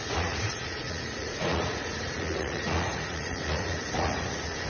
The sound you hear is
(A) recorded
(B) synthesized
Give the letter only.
B